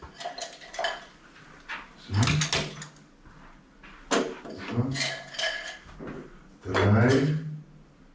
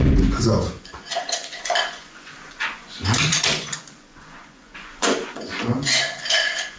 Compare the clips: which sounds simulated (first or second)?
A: second